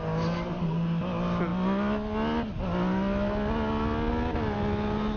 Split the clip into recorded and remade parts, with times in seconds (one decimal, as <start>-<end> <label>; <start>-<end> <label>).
0.0-5.2 recorded